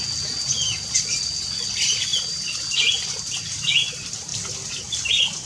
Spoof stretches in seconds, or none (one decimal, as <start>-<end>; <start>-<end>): 2.1-3.7